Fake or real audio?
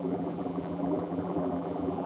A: fake